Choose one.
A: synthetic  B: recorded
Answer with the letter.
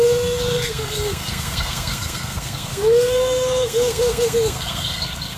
A